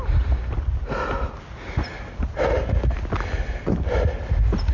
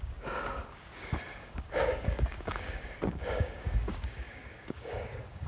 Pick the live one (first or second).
first